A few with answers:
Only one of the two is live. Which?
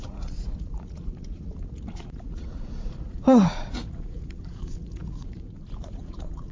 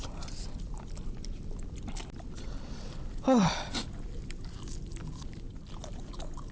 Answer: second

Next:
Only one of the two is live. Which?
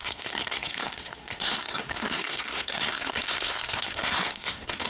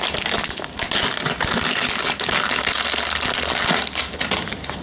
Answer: second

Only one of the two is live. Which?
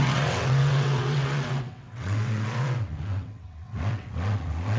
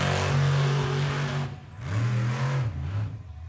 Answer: second